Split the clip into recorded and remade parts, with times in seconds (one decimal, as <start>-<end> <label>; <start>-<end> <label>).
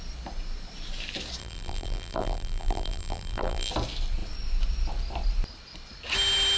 0.0-1.4 recorded; 1.4-3.7 remade; 3.7-6.6 recorded